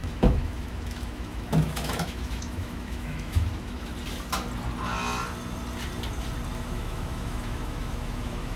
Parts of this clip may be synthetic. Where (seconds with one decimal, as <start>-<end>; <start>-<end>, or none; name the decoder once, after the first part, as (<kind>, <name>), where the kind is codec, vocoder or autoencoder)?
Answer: 0.0-3.9 (autoencoder, DAC-VAE); 6.5-8.6